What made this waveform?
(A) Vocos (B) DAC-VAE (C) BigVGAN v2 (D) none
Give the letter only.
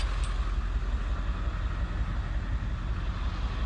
D